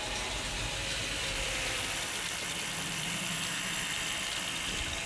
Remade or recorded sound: recorded